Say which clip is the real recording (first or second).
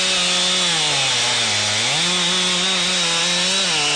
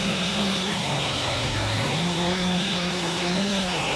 first